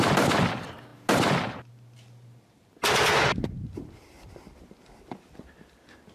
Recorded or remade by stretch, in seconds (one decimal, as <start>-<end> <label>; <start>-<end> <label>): 0.0-6.1 recorded